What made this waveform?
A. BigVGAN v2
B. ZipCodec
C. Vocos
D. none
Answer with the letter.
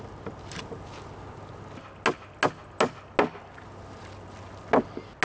D